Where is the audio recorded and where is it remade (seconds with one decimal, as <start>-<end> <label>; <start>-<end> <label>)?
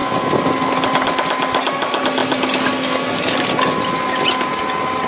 0.0-5.1 recorded